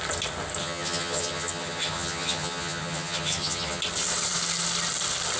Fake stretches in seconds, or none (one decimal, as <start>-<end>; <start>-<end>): 0.6-3.8